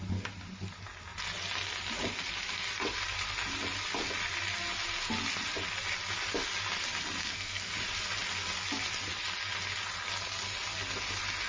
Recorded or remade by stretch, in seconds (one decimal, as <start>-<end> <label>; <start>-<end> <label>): 0.0-7.2 recorded; 7.2-7.7 remade; 7.7-11.5 recorded